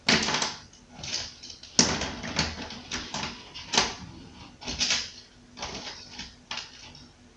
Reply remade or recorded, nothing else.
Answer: recorded